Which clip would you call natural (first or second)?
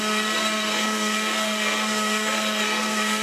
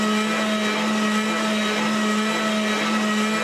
second